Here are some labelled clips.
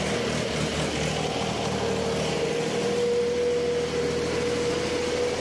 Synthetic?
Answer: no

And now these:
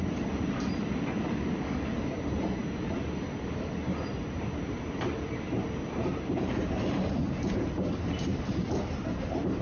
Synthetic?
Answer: yes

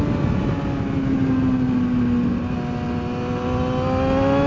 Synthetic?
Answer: no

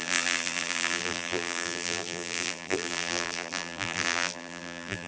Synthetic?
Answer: yes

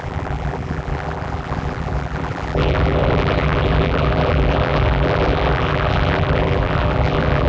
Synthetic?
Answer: yes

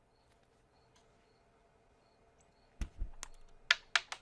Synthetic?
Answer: no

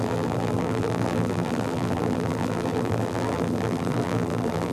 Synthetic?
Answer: yes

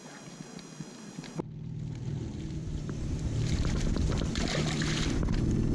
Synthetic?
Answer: yes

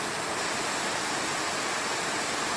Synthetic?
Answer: yes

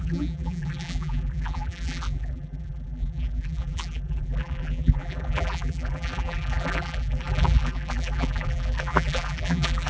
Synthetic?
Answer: yes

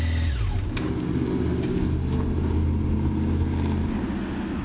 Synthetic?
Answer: no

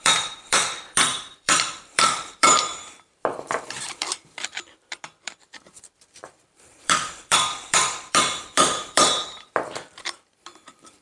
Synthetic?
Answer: yes